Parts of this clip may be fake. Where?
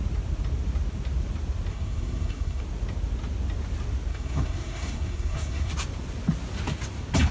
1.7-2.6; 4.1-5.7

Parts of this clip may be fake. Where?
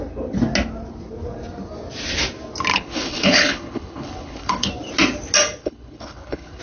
2.7-4.7; 5.6-6.6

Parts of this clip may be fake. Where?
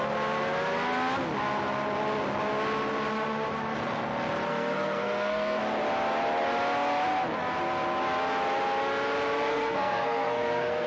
4.5-5.6; 9.5-10.9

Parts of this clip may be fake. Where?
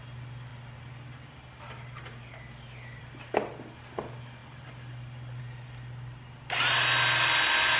none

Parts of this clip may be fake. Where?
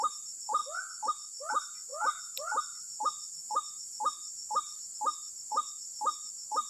0.0-0.6; 1.5-6.7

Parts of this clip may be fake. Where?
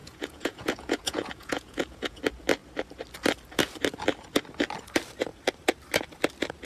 0.0-2.2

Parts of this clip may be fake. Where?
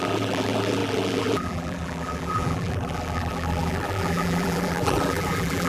0.0-5.7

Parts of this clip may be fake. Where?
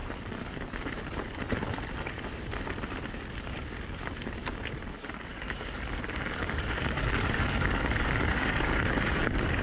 5.3-9.6